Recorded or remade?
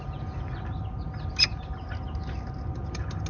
recorded